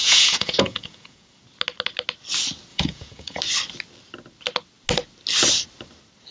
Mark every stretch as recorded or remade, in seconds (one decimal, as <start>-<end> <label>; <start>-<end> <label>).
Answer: 0.0-1.4 remade; 1.4-2.7 recorded; 2.7-3.4 remade; 3.4-6.3 recorded

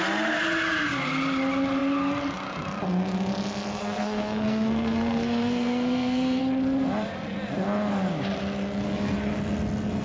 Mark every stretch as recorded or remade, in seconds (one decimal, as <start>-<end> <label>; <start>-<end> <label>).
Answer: 0.0-3.7 recorded; 3.7-6.4 remade; 6.4-10.0 recorded

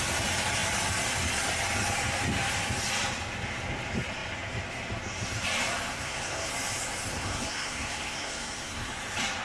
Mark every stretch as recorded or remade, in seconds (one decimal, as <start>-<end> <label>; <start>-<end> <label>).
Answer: 0.0-5.9 recorded; 5.9-6.5 remade; 6.5-7.1 recorded; 7.1-8.9 remade; 8.9-9.4 recorded

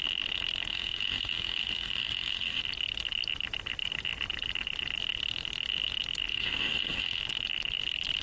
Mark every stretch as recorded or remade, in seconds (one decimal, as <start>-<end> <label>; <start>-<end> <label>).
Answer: 0.0-0.7 recorded; 0.7-2.6 remade; 2.6-6.3 recorded; 6.3-7.2 remade; 7.2-8.2 recorded

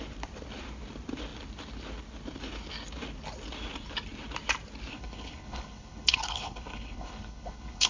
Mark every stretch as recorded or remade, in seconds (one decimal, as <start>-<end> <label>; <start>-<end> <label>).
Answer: 0.0-4.9 recorded; 4.9-7.9 remade

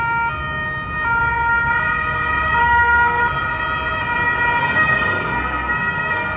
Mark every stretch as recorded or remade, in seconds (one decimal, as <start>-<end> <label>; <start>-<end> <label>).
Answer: 0.0-2.6 recorded; 2.6-3.2 remade; 3.2-4.6 recorded; 4.6-6.4 remade